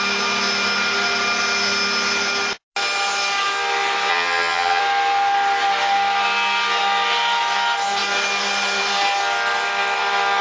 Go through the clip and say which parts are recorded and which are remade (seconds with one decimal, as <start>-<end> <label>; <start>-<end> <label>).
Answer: 0.0-4.1 recorded; 4.1-4.8 remade; 4.8-10.4 recorded

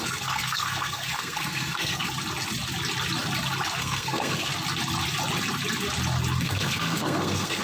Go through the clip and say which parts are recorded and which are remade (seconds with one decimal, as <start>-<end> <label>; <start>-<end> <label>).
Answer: 0.0-2.0 remade; 2.0-3.8 recorded; 3.8-4.5 remade; 4.5-6.4 recorded; 6.4-7.6 remade

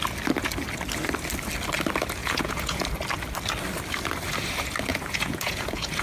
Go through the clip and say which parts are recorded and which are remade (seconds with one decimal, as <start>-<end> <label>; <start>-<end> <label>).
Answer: 0.0-2.2 recorded; 2.2-2.8 remade; 2.8-4.9 recorded; 4.9-6.0 remade

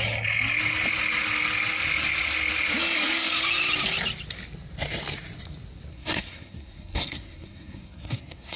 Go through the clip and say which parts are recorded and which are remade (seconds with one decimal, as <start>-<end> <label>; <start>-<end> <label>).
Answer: 0.0-5.9 recorded; 5.9-8.6 remade

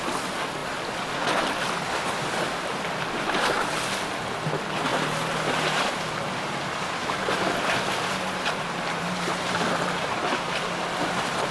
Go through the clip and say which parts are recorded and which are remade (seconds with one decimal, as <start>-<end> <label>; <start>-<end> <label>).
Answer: 0.0-4.9 recorded; 4.9-5.9 remade; 5.9-7.0 recorded; 7.0-10.6 remade; 10.6-11.5 recorded

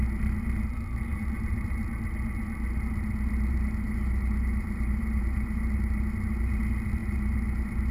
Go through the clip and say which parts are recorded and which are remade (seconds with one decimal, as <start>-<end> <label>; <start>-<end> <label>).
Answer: 0.0-1.1 recorded; 1.1-1.7 remade; 1.7-3.5 recorded; 3.5-6.6 remade; 6.6-7.0 recorded; 7.0-7.9 remade

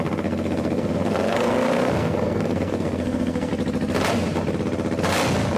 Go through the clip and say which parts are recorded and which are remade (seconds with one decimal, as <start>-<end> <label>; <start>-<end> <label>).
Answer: 0.0-3.5 remade; 3.5-5.6 recorded